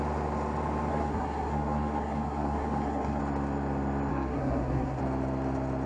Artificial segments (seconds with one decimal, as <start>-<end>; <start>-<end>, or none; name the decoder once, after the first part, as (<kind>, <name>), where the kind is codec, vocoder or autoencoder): 0.9-3.2 (codec, SNAC); 4.1-5.0